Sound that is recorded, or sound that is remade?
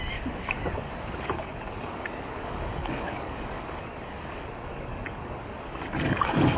remade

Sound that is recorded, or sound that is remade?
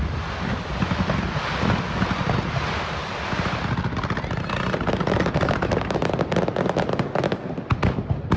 recorded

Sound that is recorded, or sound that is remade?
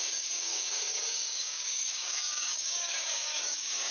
remade